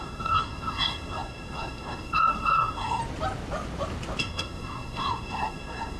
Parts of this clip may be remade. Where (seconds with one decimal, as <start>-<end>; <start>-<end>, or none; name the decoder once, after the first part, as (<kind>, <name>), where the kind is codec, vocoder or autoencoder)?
0.0-3.0 (codec, SNAC); 4.2-6.0